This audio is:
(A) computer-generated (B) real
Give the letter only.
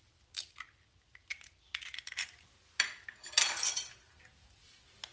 B